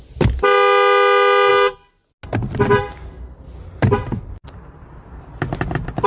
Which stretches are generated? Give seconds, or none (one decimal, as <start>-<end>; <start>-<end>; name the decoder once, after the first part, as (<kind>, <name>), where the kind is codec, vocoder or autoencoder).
none